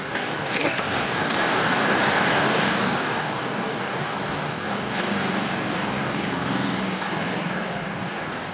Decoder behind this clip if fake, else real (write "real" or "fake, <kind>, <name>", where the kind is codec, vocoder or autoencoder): fake, codec, DAC